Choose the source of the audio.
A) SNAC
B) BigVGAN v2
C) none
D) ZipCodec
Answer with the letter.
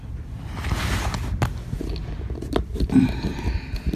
C